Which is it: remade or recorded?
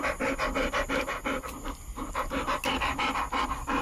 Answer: recorded